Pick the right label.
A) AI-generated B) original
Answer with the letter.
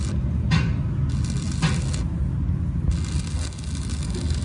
B